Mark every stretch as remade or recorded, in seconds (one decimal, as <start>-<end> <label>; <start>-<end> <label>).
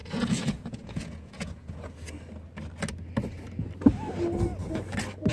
0.0-1.9 remade; 1.9-5.3 recorded